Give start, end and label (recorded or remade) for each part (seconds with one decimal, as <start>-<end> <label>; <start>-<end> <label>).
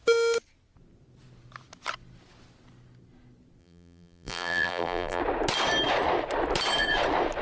0.0-3.6 recorded; 3.6-5.2 remade; 5.2-7.4 recorded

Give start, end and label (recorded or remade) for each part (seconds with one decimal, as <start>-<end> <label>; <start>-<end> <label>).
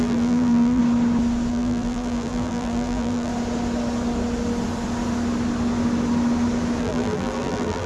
0.0-0.8 remade; 0.8-1.5 recorded; 1.5-3.3 remade; 3.3-6.8 recorded; 6.8-7.9 remade